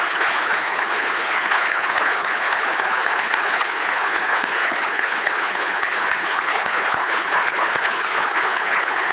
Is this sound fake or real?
fake